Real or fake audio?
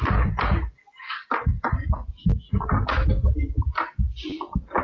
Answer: real